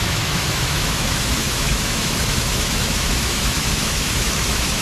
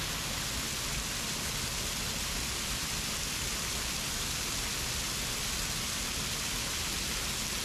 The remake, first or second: first